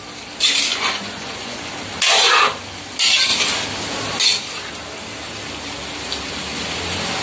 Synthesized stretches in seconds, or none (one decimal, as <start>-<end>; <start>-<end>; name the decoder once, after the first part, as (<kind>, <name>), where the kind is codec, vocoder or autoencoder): 0.7-1.7 (vocoder, Vocos)